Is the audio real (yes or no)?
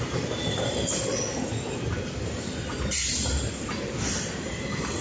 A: yes